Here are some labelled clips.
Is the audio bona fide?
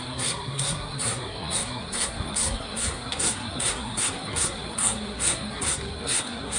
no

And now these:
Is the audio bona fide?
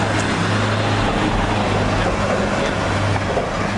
yes